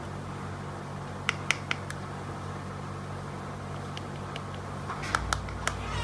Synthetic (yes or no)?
no